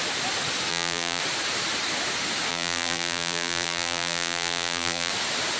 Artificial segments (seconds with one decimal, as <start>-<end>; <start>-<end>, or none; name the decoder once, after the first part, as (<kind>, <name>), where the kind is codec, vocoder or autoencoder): 0.7-1.2 (vocoder, BigVGAN v2); 2.5-5.1